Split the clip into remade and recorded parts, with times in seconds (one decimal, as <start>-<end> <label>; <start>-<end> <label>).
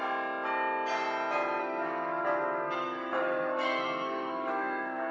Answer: 0.0-1.6 recorded; 1.6-5.1 remade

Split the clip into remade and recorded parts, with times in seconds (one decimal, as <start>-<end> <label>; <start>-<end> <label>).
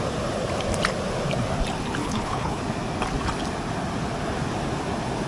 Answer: 0.0-2.0 recorded; 2.0-2.6 remade; 2.6-5.3 recorded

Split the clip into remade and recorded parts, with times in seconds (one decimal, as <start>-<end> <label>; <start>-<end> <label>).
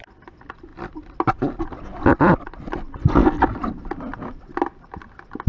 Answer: 0.0-5.5 recorded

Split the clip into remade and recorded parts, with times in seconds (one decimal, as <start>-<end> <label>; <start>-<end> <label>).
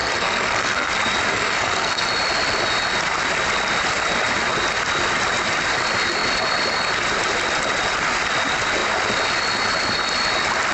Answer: 0.0-0.9 remade; 0.9-1.3 recorded; 1.3-2.1 remade; 2.1-10.7 recorded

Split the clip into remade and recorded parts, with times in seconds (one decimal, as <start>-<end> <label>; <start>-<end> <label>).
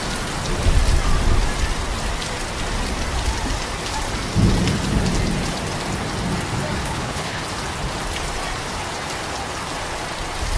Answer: 0.0-6.8 recorded; 6.8-7.4 remade; 7.4-10.6 recorded